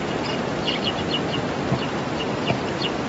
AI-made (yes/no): no